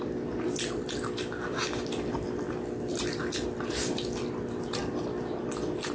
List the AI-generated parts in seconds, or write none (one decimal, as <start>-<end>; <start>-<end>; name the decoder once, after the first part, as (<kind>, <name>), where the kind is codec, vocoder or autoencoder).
none